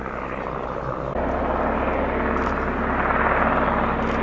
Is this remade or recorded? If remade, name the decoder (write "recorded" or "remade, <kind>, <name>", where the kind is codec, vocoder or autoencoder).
recorded